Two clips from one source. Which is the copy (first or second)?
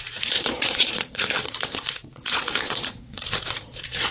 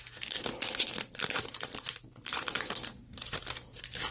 first